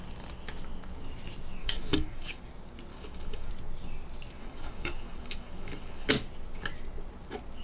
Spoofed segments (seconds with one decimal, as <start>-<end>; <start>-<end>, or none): 1.6-2.4; 2.9-3.5; 4.4-6.1